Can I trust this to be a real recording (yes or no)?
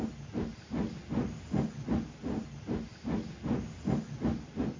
yes